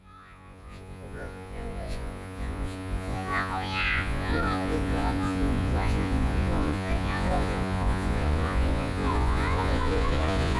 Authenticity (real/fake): fake